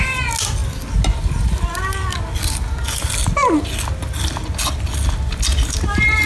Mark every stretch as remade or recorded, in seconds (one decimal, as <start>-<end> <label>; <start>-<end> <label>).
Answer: 0.0-6.3 recorded